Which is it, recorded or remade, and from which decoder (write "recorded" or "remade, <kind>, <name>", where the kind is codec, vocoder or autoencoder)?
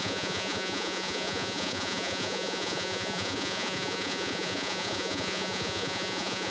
remade, vocoder, Vocos